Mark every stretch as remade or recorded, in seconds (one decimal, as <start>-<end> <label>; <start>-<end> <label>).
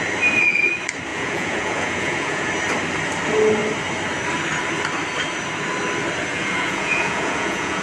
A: 0.0-1.1 recorded; 1.1-2.5 remade; 2.5-6.3 recorded; 6.3-7.8 remade